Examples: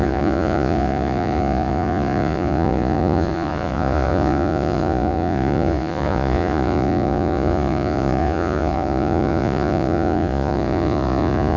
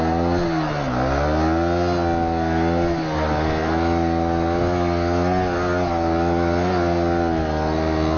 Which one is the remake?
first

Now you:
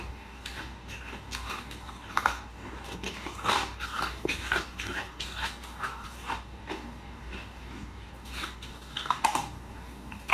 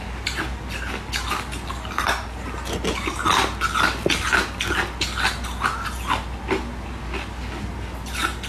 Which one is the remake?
first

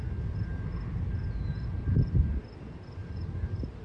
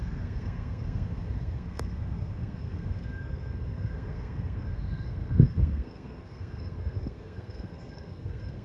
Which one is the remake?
second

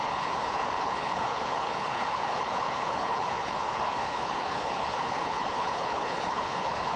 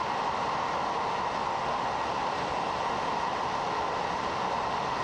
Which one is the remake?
first